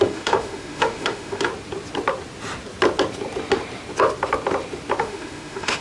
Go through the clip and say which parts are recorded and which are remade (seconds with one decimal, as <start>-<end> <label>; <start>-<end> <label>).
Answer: 0.0-1.5 remade; 1.5-5.0 recorded; 5.0-5.8 remade